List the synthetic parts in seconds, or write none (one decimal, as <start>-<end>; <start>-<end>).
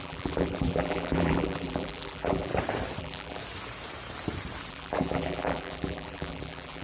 0.0-2.5; 3.0-3.4; 4.7-6.8